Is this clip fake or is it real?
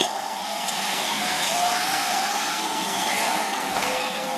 fake